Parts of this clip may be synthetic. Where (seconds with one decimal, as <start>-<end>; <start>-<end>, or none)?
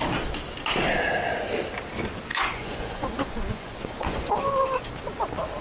2.3-4.3